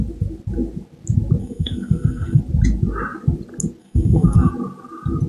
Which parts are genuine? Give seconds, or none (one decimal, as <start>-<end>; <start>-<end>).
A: 0.0-1.4; 2.4-3.8; 4.5-5.3